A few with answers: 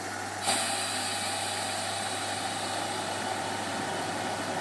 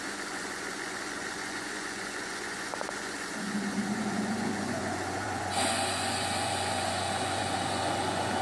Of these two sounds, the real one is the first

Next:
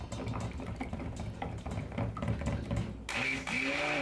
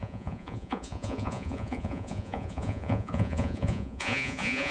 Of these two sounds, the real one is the first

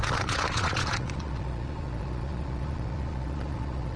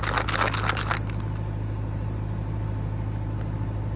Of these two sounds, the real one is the second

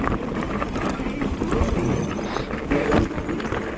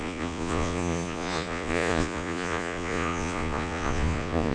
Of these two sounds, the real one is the first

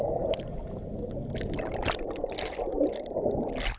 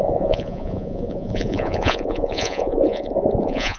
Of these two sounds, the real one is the first